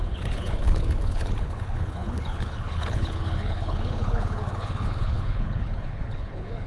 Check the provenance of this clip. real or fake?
fake